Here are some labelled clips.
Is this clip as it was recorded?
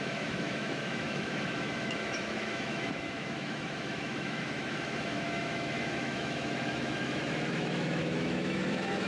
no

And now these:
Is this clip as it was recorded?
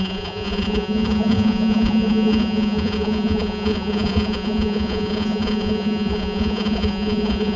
no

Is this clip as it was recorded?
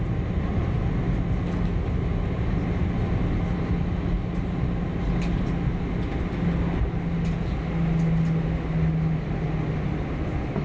yes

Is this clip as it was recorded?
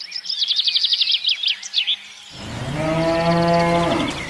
yes